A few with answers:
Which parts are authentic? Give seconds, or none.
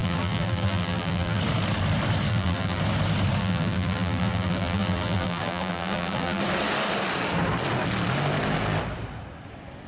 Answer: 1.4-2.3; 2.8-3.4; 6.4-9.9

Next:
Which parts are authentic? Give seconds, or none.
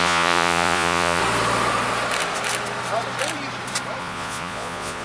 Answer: 1.2-4.0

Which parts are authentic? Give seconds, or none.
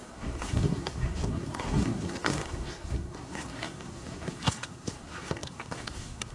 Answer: none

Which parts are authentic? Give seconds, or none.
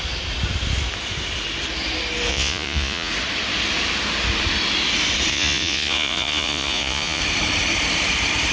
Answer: 0.0-2.3; 3.1-5.3; 7.2-8.5